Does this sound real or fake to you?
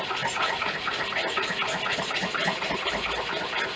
real